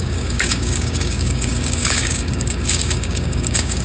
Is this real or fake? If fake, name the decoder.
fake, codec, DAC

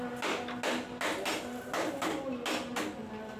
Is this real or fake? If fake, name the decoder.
real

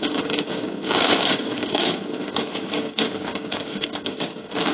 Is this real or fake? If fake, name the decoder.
fake, codec, DAC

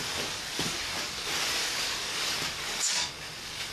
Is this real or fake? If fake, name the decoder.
fake, codec, DAC